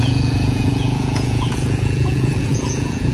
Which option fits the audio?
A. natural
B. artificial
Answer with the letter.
B